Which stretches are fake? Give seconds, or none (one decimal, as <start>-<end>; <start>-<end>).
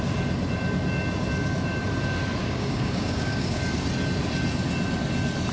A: 2.4-3.6